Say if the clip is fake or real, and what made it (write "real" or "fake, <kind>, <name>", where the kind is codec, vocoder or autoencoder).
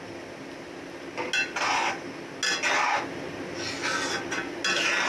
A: real